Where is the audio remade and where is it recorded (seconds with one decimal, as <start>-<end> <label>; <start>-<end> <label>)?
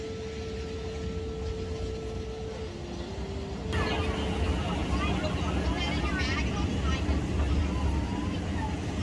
0.0-9.0 recorded